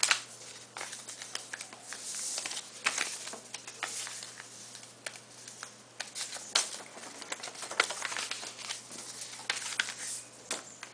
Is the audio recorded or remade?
recorded